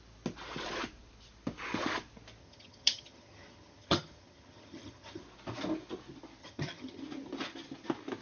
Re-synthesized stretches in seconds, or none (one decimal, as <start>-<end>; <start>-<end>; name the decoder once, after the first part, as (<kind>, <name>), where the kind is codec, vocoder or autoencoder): 2.4-5.2 (vocoder, HiFi-GAN); 6.4-7.0